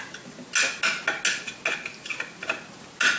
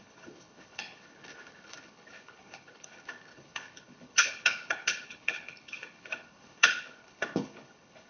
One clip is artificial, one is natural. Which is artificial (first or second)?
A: second